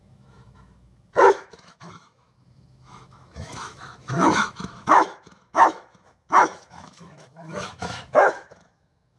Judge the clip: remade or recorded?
remade